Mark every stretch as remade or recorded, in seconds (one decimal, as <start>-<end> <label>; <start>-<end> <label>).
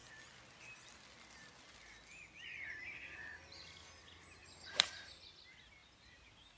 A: 0.0-4.4 recorded; 4.4-4.9 remade; 4.9-5.8 recorded; 5.8-6.6 remade